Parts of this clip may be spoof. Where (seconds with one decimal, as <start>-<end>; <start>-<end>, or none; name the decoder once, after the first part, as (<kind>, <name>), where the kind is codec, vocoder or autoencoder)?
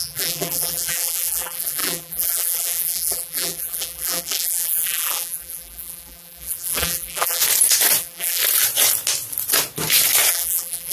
0.0-7.4 (vocoder, BigVGAN v2); 8.0-8.4; 10.3-10.9